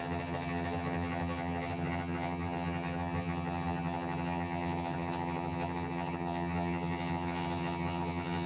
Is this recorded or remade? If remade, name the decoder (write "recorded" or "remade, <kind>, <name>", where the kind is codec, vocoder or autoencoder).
remade, vocoder, HiFi-GAN